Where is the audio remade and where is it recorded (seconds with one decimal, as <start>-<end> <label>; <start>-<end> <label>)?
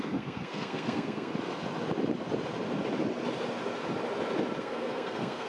0.0-1.3 remade; 1.3-4.6 recorded; 4.6-5.5 remade